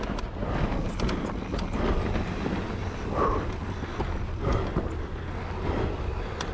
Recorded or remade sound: recorded